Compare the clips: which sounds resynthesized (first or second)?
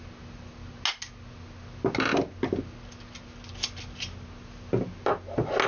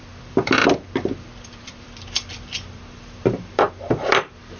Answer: second